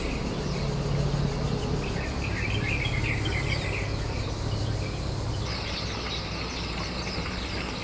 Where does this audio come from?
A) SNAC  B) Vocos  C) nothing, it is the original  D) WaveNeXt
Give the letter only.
C